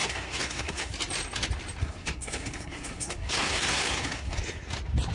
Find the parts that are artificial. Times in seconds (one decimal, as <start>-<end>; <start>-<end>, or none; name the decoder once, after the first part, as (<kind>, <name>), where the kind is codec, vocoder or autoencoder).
0.0-0.9 (codec, SNAC); 1.8-4.4